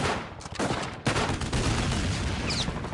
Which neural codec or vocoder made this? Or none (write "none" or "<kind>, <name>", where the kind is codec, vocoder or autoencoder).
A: none